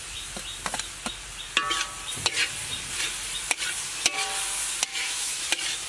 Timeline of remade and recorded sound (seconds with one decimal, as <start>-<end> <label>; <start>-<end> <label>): 0.0-4.9 recorded; 4.9-5.4 remade; 5.4-5.9 recorded